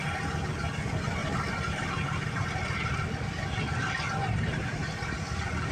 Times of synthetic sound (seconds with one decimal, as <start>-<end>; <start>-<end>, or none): none